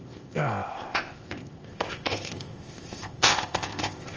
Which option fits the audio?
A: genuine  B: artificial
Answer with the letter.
B